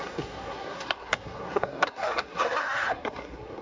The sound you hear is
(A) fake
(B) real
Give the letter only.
A